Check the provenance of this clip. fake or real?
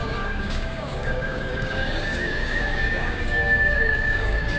fake